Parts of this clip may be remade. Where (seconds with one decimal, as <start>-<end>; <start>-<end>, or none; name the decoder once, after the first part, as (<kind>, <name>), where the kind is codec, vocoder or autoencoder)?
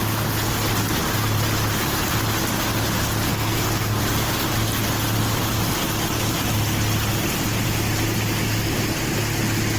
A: 3.3-4.0 (codec, SNAC)